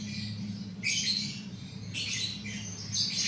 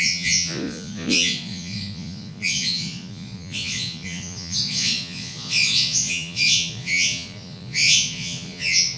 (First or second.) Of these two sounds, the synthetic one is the second